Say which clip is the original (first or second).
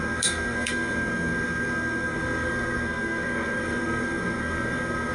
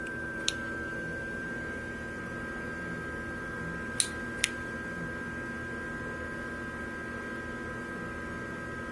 second